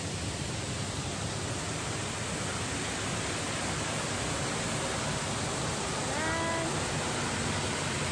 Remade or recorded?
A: recorded